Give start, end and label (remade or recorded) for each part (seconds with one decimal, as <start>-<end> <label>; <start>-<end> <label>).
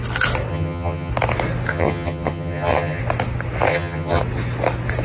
0.0-0.5 recorded; 0.5-1.1 remade; 1.1-1.7 recorded; 1.7-3.0 remade; 3.0-3.7 recorded; 3.7-4.2 remade; 4.2-5.0 recorded